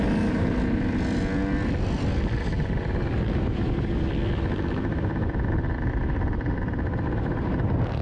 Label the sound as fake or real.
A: real